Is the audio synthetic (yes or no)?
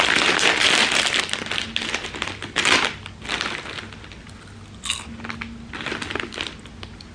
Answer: no